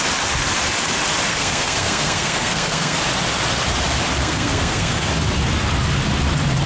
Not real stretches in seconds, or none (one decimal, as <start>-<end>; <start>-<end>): 1.3-3.0; 4.2-5.1